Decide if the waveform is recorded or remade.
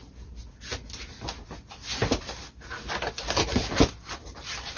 recorded